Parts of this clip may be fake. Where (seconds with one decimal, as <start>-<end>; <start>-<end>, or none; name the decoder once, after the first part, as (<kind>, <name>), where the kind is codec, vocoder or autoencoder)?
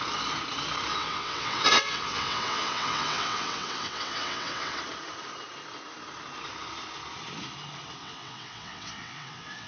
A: 0.9-4.8 (vocoder, WaveNeXt); 8.0-9.7